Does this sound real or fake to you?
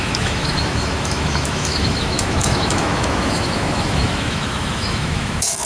fake